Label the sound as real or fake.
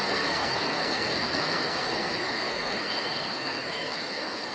fake